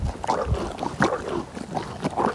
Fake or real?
real